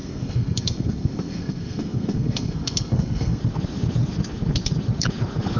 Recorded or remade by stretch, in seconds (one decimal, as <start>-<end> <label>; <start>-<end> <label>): 0.0-3.4 remade; 3.4-5.6 recorded